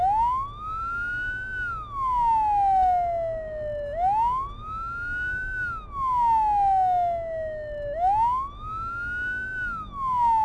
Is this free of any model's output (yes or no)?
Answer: yes